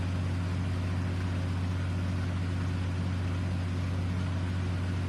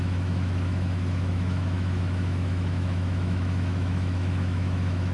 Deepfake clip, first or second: second